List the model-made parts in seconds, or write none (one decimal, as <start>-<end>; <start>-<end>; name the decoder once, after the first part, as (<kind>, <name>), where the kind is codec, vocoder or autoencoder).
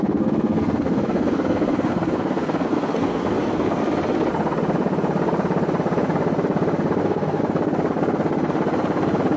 0.0-3.8 (codec, SNAC); 7.0-7.4